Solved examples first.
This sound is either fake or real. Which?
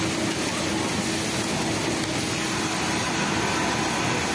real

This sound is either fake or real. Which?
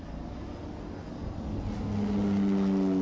real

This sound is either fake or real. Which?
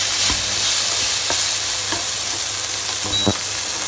real